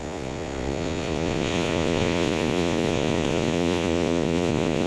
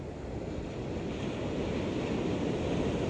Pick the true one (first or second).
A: second